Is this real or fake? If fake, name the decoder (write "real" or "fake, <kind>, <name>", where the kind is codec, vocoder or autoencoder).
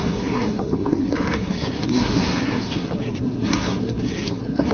fake, codec, SNAC